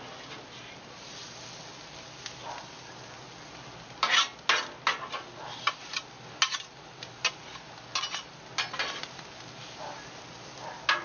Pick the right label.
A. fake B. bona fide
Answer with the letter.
B